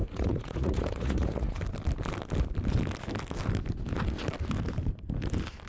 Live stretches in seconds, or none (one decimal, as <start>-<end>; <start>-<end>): 1.6-5.7